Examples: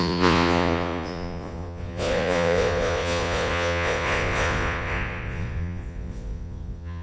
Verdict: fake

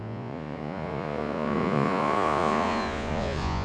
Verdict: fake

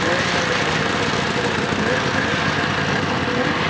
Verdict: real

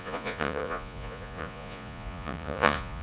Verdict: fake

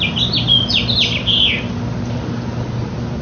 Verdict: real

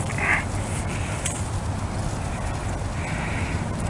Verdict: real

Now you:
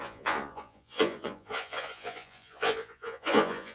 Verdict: fake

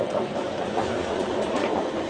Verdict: fake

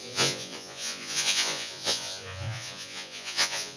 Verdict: fake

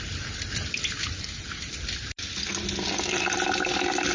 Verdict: real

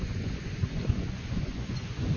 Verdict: fake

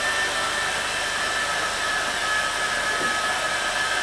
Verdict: real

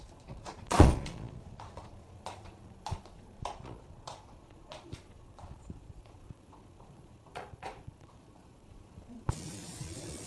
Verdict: fake